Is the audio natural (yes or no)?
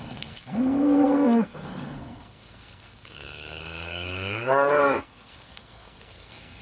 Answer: no